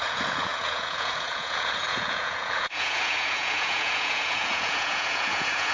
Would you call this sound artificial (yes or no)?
yes